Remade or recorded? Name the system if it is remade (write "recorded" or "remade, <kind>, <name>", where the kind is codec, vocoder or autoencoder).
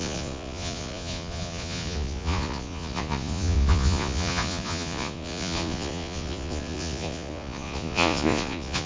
remade, vocoder, Vocos